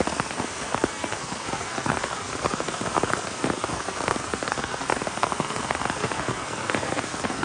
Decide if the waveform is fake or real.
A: fake